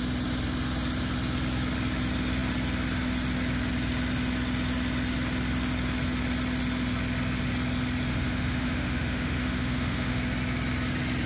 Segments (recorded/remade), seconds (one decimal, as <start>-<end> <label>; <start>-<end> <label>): 0.0-8.1 recorded; 8.1-10.2 remade; 10.2-11.3 recorded